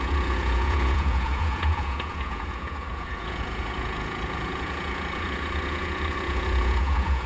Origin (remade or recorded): remade